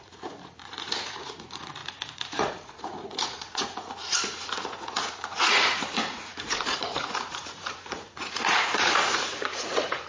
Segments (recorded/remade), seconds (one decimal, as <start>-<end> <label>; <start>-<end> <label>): 0.0-10.1 remade